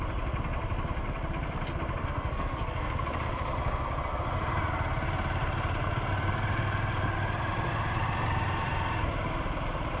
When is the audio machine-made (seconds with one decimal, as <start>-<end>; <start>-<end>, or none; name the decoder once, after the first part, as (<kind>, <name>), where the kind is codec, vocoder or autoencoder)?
2.0-2.9 (codec, SNAC)

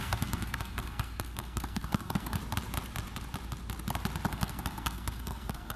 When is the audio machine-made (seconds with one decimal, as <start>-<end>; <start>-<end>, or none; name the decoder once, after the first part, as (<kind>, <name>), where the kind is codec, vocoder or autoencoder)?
0.0-2.4 (codec, SNAC); 4.3-5.8

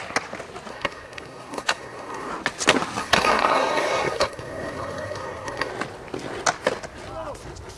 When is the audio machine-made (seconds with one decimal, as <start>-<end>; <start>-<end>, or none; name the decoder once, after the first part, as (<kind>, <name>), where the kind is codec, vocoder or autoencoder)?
0.7-2.3 (codec, SNAC); 3.0-5.7

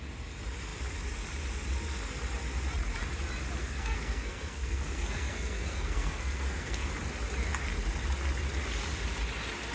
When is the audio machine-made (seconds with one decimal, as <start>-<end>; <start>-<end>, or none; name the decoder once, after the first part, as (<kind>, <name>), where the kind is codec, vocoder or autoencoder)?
3.6-6.9 (codec, SNAC)

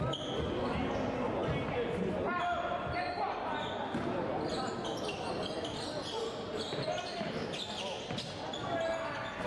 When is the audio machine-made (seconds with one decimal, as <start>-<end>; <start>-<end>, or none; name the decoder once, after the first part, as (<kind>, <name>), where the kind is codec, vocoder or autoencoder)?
none

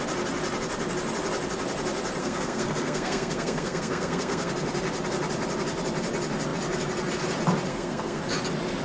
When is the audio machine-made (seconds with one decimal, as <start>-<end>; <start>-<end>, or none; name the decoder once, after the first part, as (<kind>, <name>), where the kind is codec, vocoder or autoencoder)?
2.2-4.5 (codec, SNAC); 7.7-8.2

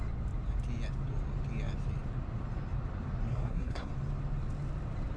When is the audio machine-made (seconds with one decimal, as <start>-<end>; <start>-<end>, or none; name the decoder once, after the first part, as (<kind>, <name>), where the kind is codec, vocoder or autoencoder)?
3.3-3.9 (codec, SNAC)

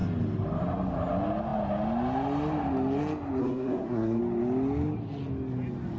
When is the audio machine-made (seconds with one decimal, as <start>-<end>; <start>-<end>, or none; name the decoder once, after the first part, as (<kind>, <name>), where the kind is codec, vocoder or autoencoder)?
3.4-4.2 (codec, SNAC)